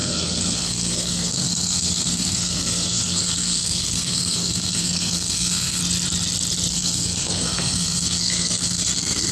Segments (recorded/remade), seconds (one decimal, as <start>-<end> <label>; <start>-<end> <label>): 0.0-5.8 remade; 5.8-6.7 recorded; 6.7-9.3 remade